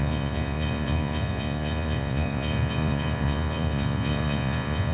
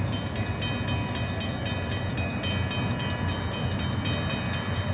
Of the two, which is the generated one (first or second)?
first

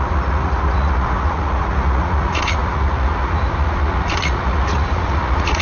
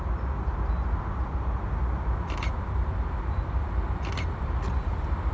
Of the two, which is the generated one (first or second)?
first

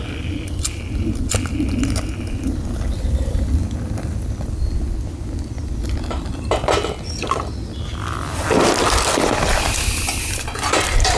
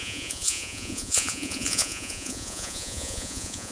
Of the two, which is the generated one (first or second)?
second